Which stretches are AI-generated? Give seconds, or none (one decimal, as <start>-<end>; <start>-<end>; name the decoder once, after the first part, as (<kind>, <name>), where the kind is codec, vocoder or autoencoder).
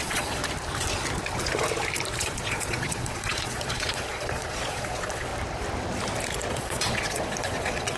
0.0-0.4 (vocoder, Vocos); 2.2-5.3; 6.5-8.0